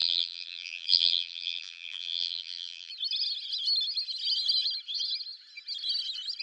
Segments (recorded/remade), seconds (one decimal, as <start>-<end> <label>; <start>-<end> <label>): 0.0-2.9 remade; 2.9-6.4 recorded